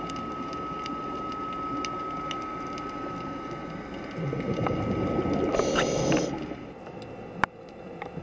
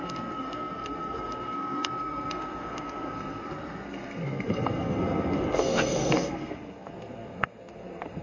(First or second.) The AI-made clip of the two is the second